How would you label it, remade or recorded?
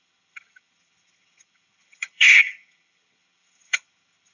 remade